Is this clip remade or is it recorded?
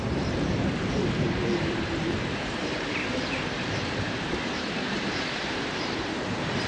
remade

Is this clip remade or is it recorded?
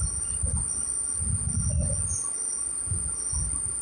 recorded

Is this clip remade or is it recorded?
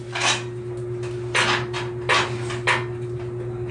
recorded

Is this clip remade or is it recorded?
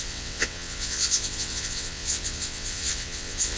remade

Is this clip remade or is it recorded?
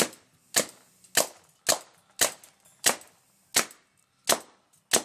recorded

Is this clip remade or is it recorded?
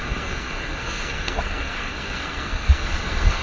remade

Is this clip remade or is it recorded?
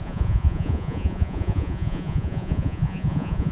remade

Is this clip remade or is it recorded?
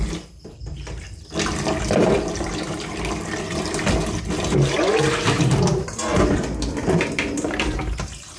remade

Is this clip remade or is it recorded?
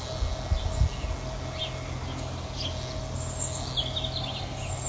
recorded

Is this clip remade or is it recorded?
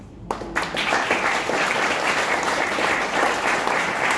recorded